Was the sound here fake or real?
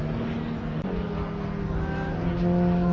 real